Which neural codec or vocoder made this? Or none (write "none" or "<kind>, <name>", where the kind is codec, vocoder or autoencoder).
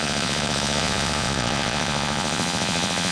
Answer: vocoder, Vocos